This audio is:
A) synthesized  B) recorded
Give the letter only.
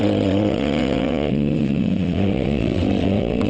A